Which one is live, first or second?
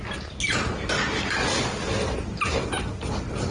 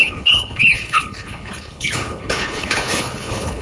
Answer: first